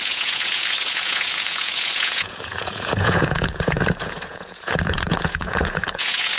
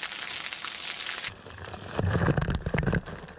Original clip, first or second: second